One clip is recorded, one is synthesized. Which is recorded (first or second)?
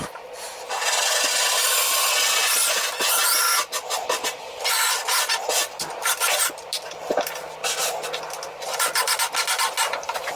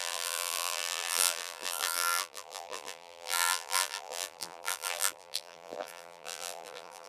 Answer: first